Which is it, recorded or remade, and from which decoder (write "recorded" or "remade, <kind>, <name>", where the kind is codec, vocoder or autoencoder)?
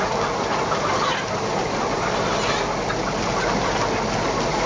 recorded